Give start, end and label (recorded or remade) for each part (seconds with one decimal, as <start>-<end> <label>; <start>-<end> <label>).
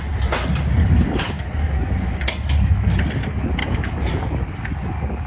0.0-0.8 recorded; 0.8-3.0 remade; 3.0-3.6 recorded; 3.6-5.3 remade